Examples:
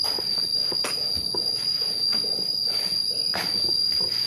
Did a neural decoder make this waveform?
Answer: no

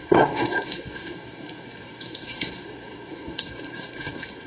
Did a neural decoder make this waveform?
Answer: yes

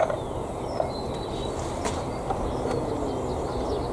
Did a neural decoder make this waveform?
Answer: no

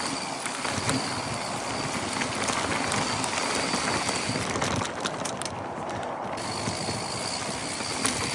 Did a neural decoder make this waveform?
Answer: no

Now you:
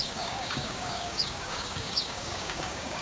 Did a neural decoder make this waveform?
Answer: yes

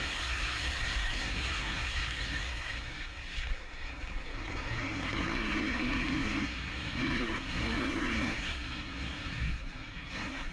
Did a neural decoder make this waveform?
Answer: yes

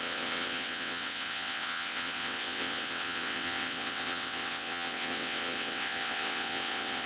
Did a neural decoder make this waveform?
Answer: yes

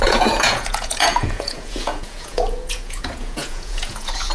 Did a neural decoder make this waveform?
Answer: yes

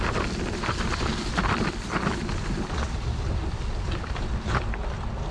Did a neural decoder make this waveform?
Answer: no